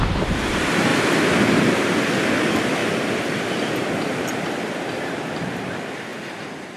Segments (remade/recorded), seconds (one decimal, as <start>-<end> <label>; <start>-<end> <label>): 0.0-0.9 remade; 0.9-1.4 recorded; 1.4-6.1 remade; 6.1-6.8 recorded